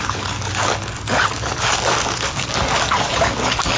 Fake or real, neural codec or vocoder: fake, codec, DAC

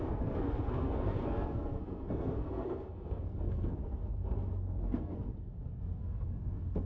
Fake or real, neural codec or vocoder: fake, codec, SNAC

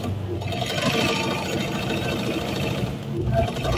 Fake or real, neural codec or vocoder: real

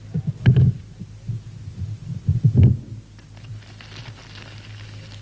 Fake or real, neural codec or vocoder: real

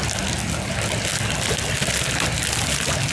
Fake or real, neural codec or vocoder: real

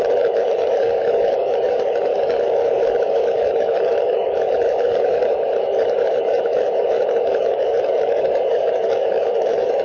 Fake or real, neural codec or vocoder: fake, codec, DAC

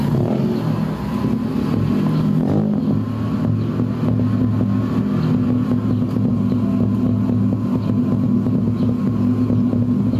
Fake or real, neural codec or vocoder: real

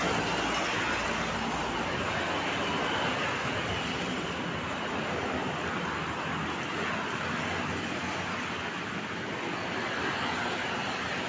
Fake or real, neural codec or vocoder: real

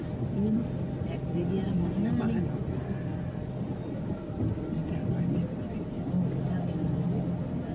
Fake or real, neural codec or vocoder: real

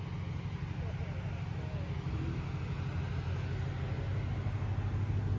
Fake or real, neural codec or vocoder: real